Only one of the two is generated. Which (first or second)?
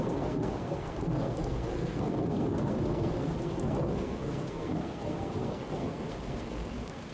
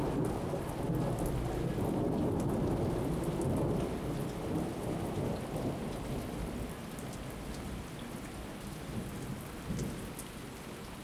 first